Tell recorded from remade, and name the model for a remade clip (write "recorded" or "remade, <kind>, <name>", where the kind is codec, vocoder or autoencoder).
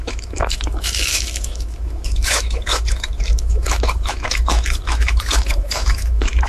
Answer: remade, autoencoder, DAC-VAE